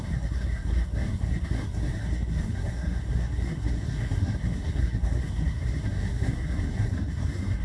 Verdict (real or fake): fake